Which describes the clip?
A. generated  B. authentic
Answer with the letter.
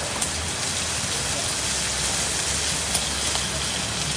B